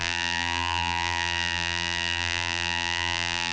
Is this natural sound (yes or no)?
no